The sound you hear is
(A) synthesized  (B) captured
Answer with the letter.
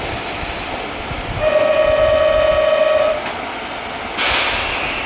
B